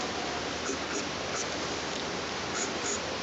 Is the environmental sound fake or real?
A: real